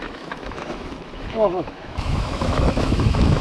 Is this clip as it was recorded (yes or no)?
no